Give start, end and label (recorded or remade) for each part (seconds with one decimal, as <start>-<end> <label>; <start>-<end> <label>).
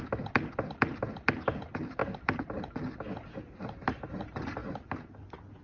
0.0-5.6 recorded